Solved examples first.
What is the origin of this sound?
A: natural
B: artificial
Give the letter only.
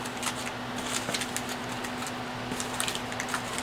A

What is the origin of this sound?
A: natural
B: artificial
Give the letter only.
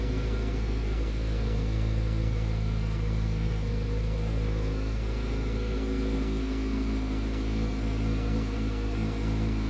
B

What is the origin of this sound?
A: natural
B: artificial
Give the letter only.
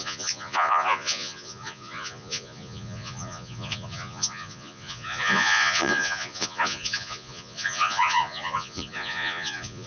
B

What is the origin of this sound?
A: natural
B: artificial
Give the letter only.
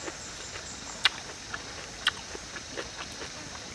A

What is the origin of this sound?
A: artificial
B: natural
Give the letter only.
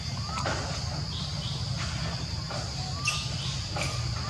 B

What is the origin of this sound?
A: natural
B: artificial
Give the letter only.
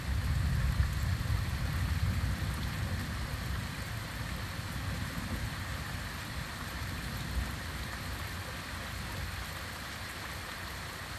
A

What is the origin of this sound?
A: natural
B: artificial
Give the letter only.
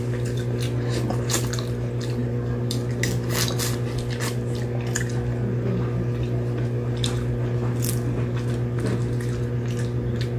A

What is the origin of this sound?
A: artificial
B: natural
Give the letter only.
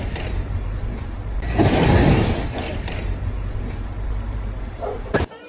A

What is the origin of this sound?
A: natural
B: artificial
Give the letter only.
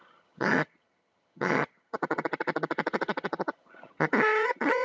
B